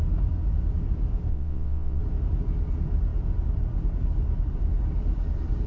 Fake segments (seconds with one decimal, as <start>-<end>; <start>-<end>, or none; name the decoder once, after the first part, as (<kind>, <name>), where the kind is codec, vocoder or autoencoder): 1.3-2.0 (vocoder, WaveNeXt)